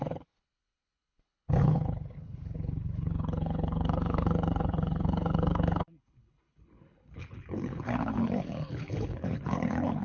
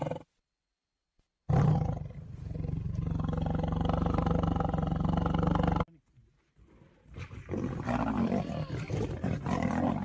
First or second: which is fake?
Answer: first